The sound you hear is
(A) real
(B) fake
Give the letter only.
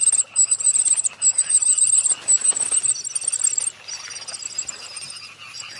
B